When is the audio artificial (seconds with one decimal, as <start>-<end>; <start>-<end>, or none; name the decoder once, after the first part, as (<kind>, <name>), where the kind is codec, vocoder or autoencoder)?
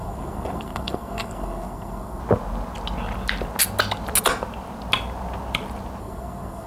0.0-2.2 (codec, SNAC); 6.0-6.7